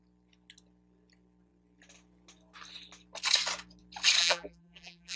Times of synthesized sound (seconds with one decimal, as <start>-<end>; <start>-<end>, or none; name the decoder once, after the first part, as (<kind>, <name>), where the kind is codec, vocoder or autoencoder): 4.2-5.2 (vocoder, BigVGAN v2)